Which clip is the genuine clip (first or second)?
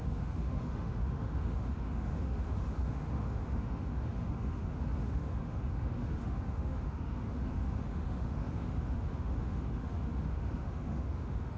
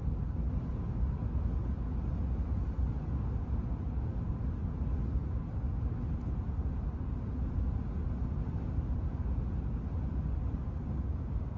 second